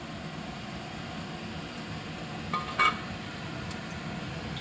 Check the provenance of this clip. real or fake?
real